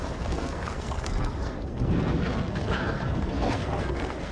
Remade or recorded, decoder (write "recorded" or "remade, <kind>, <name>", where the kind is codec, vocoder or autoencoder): remade, codec, SNAC